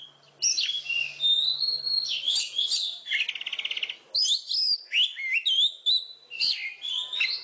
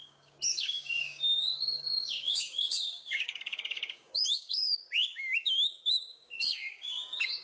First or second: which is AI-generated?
second